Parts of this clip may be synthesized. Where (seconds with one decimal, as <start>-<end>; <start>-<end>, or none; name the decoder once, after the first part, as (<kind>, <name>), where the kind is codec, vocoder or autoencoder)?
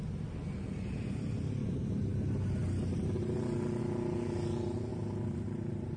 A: 4.9-6.0 (vocoder, BigVGAN v2)